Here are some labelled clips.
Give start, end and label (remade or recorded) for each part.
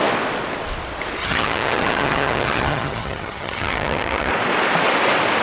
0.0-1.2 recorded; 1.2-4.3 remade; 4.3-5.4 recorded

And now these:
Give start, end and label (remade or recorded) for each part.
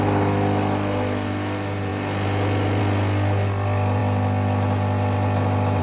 0.0-5.8 recorded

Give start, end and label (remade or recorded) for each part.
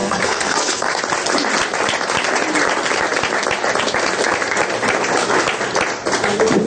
0.0-1.0 remade; 1.0-6.7 recorded